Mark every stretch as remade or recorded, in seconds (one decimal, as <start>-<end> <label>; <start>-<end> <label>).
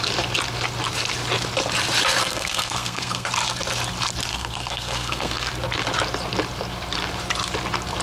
0.0-2.2 recorded; 2.2-3.3 remade; 3.3-4.3 recorded; 4.3-5.5 remade; 5.5-8.0 recorded